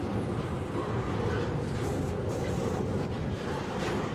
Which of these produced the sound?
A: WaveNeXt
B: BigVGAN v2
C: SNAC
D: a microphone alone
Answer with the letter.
B